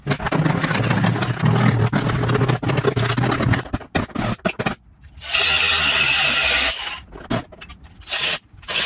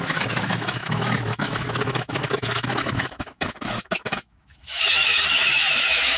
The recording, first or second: first